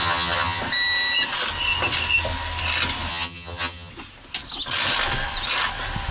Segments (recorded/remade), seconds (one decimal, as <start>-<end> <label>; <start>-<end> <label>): 0.0-0.6 remade; 0.6-3.1 recorded; 3.1-3.9 remade; 3.9-6.1 recorded